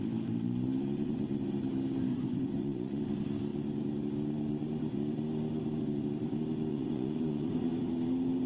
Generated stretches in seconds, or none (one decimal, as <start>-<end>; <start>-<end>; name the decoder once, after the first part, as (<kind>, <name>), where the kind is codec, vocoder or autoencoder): 2.1-3.0 (vocoder, Vocos); 6.7-7.7